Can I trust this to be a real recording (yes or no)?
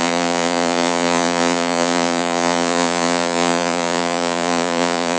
no